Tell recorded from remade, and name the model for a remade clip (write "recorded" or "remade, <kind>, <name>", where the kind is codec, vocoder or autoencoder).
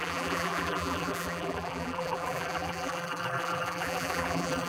remade, vocoder, BigVGAN v2